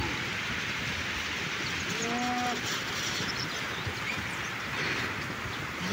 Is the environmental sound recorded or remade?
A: recorded